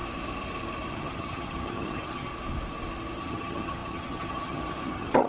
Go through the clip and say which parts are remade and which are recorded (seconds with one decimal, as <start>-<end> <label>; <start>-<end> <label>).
0.0-0.9 recorded; 0.9-2.3 remade; 2.3-3.2 recorded; 3.2-5.3 remade